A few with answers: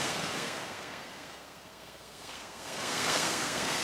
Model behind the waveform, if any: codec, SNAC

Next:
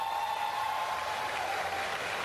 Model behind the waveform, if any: none